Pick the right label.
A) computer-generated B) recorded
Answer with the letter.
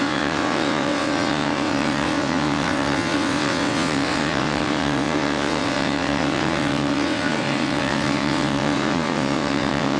A